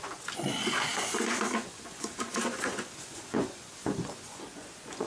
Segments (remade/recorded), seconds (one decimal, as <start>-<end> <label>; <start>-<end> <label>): 0.0-5.1 remade